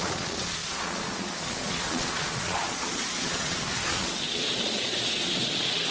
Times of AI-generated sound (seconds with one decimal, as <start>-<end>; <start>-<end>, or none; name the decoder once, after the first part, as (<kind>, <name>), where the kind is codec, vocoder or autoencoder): 0.0-5.9 (vocoder, Vocos)